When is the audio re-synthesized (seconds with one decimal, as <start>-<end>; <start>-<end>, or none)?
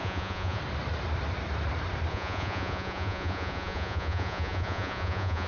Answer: 0.0-0.6; 2.1-5.5